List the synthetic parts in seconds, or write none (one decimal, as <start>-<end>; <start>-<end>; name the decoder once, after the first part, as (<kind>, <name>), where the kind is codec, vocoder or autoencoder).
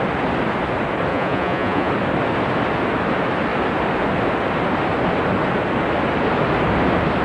1.1-1.9 (vocoder, Vocos)